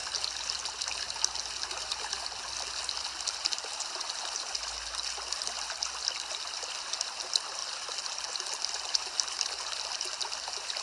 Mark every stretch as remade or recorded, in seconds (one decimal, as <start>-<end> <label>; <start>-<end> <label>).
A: 0.0-10.8 recorded